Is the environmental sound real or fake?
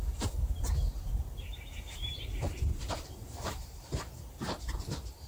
fake